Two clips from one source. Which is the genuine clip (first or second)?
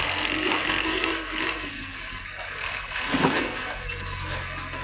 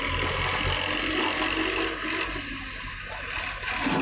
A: second